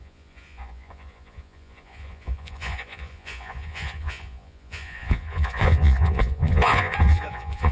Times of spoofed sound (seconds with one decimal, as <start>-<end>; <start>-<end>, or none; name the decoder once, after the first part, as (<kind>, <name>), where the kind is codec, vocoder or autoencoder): 0.0-7.7 (vocoder, Vocos)

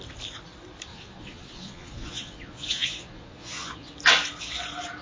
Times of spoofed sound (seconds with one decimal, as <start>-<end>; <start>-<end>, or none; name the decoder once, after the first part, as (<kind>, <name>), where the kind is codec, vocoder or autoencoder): 0.9-3.9 (vocoder, Vocos)

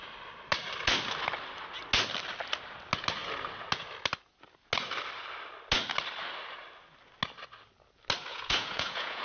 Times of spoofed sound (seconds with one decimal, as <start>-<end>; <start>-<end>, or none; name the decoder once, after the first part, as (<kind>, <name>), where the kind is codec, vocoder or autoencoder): 8.3-9.2 (vocoder, Vocos)